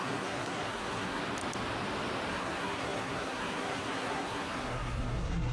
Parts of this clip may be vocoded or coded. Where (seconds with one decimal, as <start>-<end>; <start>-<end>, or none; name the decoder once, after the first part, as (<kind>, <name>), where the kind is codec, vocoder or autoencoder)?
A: 0.0-1.2 (codec, SNAC); 2.3-5.5